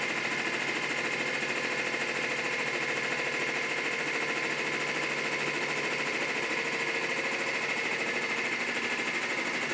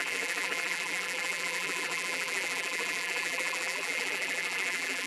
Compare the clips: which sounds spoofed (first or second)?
second